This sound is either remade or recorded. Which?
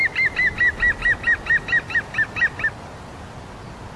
recorded